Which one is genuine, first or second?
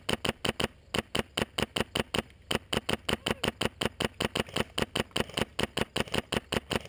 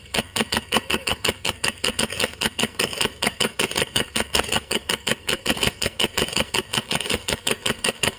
first